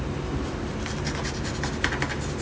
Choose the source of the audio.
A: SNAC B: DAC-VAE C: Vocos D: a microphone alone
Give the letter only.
D